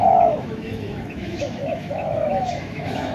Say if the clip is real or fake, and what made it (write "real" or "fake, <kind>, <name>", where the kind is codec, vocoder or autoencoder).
fake, autoencoder, DAC-VAE